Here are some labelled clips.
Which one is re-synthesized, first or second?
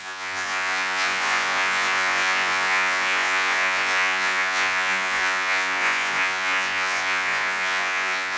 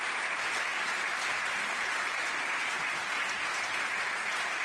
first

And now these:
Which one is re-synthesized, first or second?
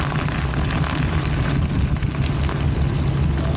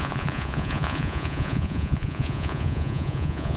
second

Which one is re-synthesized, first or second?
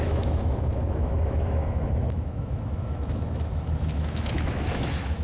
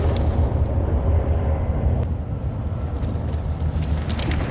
first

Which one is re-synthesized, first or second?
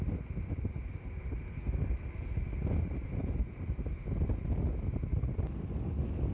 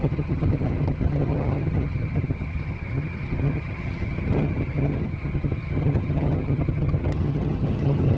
second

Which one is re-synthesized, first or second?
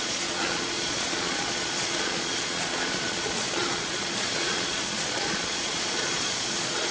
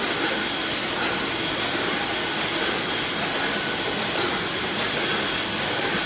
first